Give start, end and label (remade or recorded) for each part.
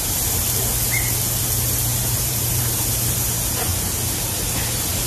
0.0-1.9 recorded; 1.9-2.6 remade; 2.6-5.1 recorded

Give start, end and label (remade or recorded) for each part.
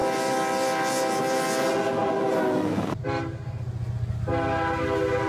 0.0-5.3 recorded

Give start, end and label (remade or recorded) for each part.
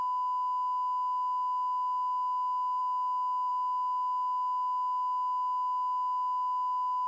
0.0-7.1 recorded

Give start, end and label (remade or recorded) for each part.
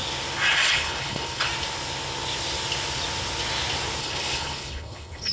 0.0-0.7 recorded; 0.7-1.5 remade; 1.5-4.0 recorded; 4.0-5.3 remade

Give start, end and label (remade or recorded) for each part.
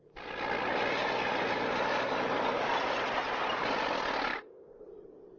0.0-4.3 recorded; 4.3-4.8 remade; 4.8-5.4 recorded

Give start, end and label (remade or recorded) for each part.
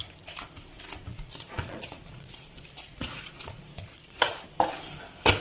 0.0-1.1 recorded; 1.1-4.3 remade; 4.3-5.4 recorded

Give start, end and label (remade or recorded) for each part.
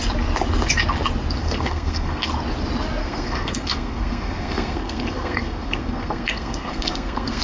0.0-1.4 recorded; 1.4-2.3 remade; 2.3-3.0 recorded; 3.0-7.4 remade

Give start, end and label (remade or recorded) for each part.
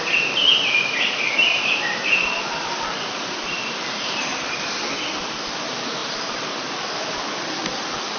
0.0-4.3 remade; 4.3-5.2 recorded; 5.2-8.2 remade